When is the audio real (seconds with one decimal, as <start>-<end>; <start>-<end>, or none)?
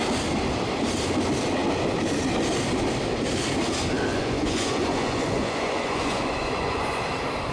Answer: 0.0-4.1; 7.0-7.5